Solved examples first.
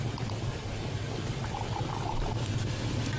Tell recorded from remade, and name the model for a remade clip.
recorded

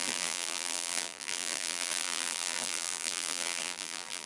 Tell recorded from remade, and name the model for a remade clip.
remade, vocoder, BigVGAN v2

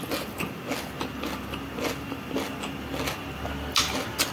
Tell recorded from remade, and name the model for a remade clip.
recorded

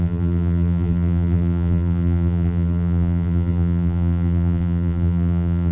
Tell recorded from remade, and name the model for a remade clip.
remade, vocoder, BigVGAN v2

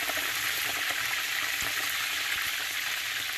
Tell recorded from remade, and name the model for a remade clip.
recorded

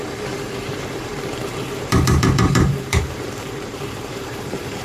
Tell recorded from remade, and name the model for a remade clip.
remade, vocoder, BigVGAN v2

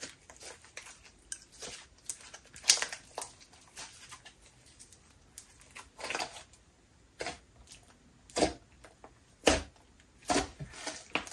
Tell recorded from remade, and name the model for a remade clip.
recorded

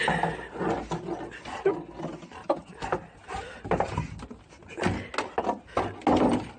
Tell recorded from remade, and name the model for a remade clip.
recorded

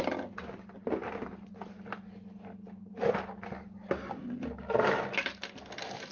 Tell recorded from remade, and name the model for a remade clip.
recorded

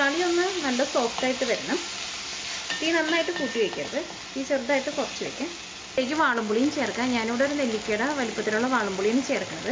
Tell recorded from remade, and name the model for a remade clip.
recorded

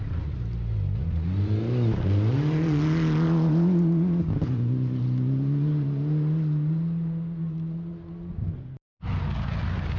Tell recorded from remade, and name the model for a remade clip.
recorded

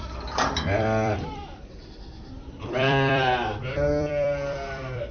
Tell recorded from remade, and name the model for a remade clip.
remade, vocoder, BigVGAN v2